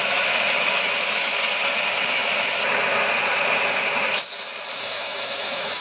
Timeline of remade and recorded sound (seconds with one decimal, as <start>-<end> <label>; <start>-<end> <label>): 0.0-1.3 remade; 1.3-4.8 recorded; 4.8-5.8 remade